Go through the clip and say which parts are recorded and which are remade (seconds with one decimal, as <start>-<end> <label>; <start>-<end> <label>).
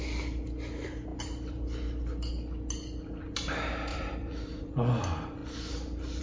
0.0-1.1 recorded; 1.1-2.3 remade; 2.3-3.9 recorded; 3.9-4.6 remade; 4.6-6.2 recorded